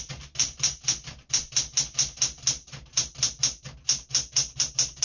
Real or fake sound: real